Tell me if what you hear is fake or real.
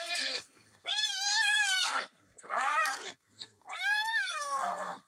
fake